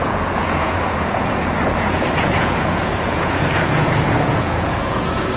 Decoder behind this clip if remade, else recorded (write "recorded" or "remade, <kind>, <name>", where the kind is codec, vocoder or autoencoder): remade, vocoder, Vocos